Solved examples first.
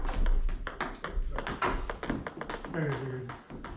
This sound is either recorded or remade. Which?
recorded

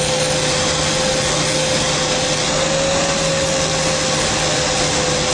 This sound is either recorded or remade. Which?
recorded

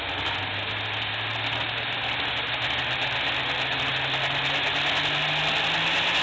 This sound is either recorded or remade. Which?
recorded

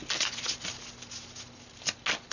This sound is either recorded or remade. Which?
recorded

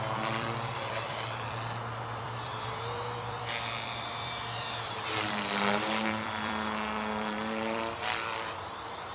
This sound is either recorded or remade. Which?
remade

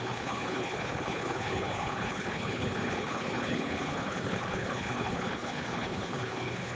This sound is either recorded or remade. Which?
remade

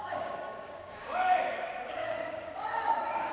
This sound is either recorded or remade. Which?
remade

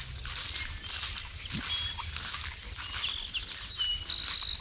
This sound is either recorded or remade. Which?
recorded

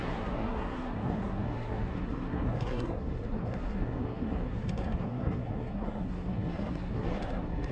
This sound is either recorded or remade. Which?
remade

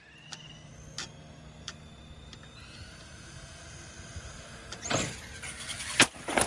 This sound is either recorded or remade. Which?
recorded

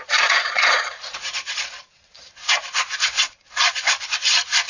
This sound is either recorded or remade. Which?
remade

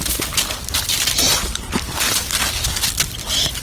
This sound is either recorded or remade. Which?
recorded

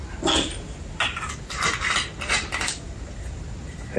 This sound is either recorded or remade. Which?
recorded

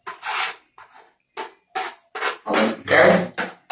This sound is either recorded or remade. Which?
recorded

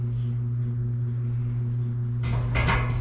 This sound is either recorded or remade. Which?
recorded